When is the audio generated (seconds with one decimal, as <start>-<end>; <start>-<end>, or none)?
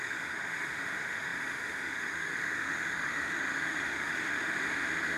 0.0-5.2